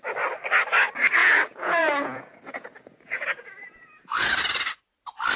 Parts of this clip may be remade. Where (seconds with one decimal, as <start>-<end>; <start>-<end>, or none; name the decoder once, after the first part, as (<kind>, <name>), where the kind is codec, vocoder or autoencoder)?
1.2-4.4 (vocoder, Vocos)